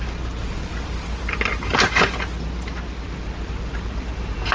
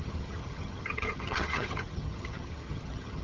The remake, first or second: second